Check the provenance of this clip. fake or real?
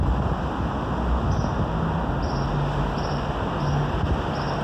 real